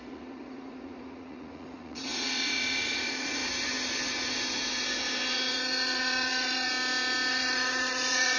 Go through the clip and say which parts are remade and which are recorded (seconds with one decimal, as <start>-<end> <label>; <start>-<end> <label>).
0.0-3.4 remade; 3.4-5.3 recorded; 5.3-6.7 remade; 6.7-7.3 recorded; 7.3-8.4 remade

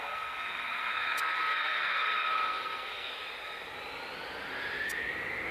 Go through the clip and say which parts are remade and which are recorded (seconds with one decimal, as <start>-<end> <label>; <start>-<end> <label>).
0.0-3.1 remade; 3.1-5.5 recorded

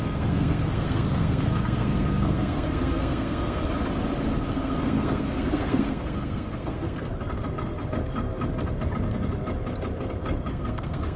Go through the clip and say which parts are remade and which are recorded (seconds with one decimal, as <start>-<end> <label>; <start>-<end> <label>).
0.0-3.6 remade; 3.6-4.5 recorded; 4.5-7.1 remade; 7.1-10.5 recorded; 10.5-11.2 remade

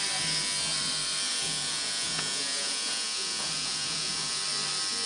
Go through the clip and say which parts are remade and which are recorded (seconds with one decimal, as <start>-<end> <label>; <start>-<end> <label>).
0.0-1.3 recorded; 1.3-4.4 remade; 4.4-5.1 recorded

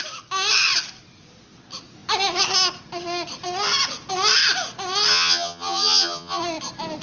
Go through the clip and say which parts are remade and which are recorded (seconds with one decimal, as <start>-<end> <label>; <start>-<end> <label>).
0.0-5.1 recorded; 5.1-6.4 remade; 6.4-7.0 recorded

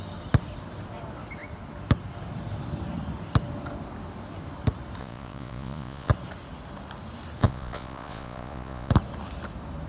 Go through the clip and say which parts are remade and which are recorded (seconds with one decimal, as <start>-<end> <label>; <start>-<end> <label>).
0.0-5.0 recorded; 5.0-6.1 remade; 6.1-7.4 recorded; 7.4-8.9 remade; 8.9-9.9 recorded